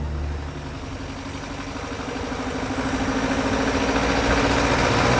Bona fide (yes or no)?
yes